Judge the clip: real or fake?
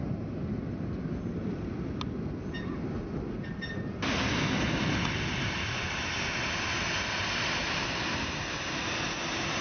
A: real